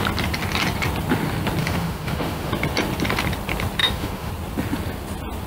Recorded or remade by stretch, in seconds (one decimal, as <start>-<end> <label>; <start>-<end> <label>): 0.0-1.6 recorded; 1.6-2.5 remade; 2.5-3.8 recorded; 3.8-4.3 remade; 4.3-5.5 recorded